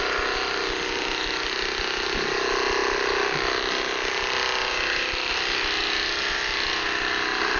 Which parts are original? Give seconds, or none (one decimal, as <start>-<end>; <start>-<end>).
0.0-7.6